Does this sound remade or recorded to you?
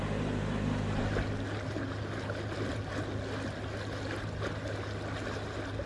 recorded